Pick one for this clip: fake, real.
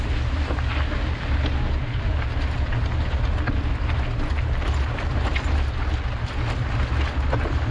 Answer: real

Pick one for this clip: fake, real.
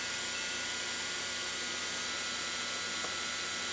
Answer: real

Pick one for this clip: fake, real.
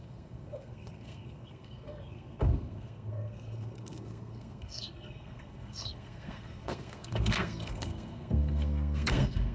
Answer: fake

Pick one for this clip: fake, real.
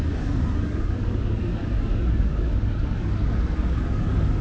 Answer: fake